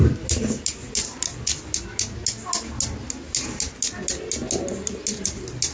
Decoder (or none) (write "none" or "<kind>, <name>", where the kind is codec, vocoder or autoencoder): none